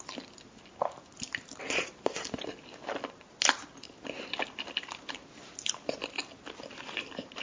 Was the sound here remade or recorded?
recorded